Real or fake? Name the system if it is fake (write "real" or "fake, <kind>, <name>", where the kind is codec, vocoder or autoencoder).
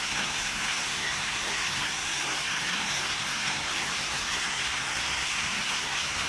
fake, codec, SNAC